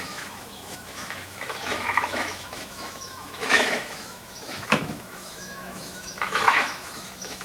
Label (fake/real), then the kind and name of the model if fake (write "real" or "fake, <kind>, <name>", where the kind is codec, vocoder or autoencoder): fake, autoencoder, DAC-VAE